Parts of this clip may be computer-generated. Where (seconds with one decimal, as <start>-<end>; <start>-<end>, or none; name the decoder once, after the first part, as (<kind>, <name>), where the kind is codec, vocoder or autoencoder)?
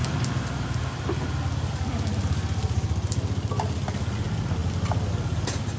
none